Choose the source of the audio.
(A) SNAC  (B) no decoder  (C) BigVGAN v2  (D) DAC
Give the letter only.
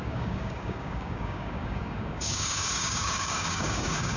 D